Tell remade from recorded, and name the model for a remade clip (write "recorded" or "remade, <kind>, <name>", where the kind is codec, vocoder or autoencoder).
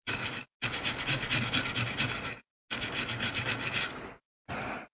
recorded